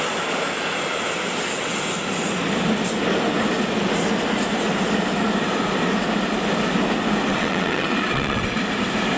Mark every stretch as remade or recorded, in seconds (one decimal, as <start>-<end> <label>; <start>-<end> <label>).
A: 0.0-7.3 recorded; 7.3-8.6 remade; 8.6-9.2 recorded

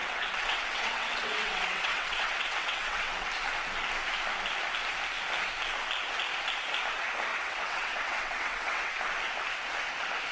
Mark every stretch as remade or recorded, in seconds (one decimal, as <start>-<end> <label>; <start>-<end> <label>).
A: 0.0-3.3 remade; 3.3-7.3 recorded; 7.3-9.0 remade; 9.0-10.3 recorded